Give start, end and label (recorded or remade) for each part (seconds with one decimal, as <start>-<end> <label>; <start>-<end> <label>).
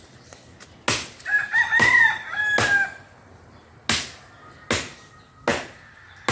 0.0-6.3 recorded